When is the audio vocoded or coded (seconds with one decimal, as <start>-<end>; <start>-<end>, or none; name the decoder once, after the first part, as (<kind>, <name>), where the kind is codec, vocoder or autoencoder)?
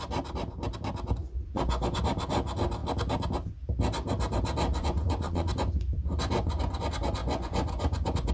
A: 1.2-2.0 (vocoder, Vocos); 4.8-6.8; 7.2-8.3